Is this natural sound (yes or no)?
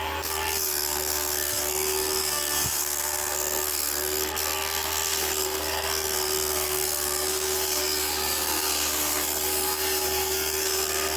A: no